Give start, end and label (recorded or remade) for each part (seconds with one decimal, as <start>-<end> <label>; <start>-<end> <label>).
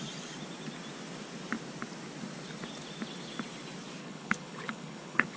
0.0-4.0 recorded; 4.0-5.4 remade